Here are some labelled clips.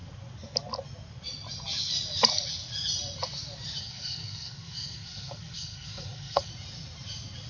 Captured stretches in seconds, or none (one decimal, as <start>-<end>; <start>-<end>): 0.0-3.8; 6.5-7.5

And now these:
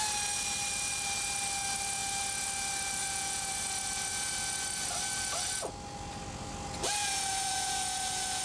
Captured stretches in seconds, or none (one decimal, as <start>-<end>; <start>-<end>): 0.0-3.0; 3.5-7.0

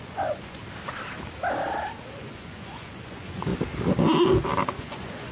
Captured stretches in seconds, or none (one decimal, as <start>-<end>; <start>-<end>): 0.6-2.2; 3.5-4.8